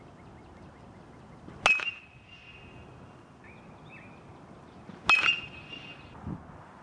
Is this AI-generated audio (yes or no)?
no